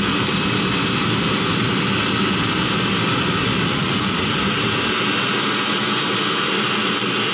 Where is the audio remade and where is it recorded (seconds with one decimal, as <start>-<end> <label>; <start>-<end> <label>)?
0.0-3.7 recorded; 3.7-4.2 remade; 4.2-7.3 recorded